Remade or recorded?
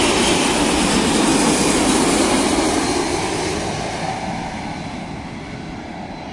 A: recorded